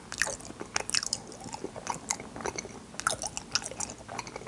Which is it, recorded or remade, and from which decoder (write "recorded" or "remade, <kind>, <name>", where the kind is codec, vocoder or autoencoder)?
recorded